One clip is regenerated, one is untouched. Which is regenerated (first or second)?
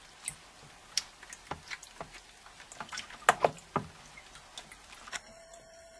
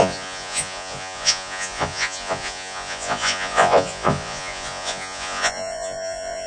second